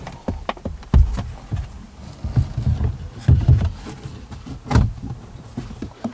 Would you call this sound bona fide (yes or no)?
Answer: yes